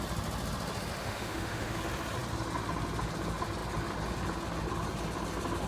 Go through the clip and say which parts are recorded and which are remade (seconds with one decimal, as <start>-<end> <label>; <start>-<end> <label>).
0.0-1.0 recorded; 1.0-1.8 remade; 1.8-5.7 recorded

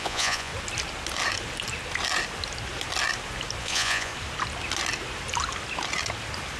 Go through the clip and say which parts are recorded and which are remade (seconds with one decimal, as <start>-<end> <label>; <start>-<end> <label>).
0.0-0.5 remade; 0.5-3.6 recorded; 3.6-4.1 remade; 4.1-6.6 recorded

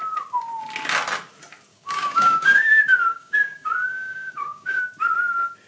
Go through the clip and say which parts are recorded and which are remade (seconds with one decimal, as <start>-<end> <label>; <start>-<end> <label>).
0.0-1.7 recorded; 1.7-2.7 remade; 2.7-3.1 recorded; 3.1-4.8 remade; 4.8-5.7 recorded

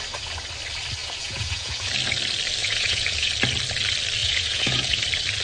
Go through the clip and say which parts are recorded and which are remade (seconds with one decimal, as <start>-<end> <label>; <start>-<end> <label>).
0.0-1.0 recorded; 1.0-1.9 remade; 1.9-2.6 recorded; 2.6-3.3 remade; 3.3-4.2 recorded; 4.2-5.0 remade; 5.0-5.4 recorded

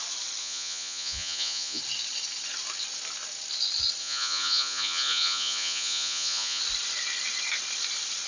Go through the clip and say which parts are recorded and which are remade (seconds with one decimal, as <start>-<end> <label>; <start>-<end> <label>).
0.0-0.4 recorded; 0.4-1.8 remade; 1.8-4.0 recorded; 4.0-6.6 remade; 6.6-8.3 recorded

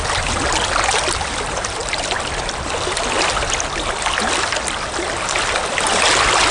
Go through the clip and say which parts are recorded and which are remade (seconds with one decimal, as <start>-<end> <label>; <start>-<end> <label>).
0.0-6.5 recorded

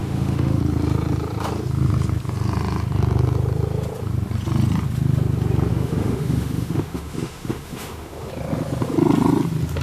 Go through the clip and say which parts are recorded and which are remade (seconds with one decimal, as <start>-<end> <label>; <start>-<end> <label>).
0.0-0.6 remade; 0.6-5.7 recorded; 5.7-8.3 remade; 8.3-9.8 recorded

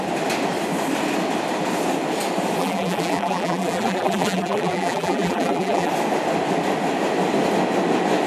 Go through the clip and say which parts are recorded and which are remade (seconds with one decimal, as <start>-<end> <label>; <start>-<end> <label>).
0.0-2.6 recorded; 2.6-5.9 remade; 5.9-8.3 recorded